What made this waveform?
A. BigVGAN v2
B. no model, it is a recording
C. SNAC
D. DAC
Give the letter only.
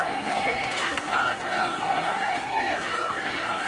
C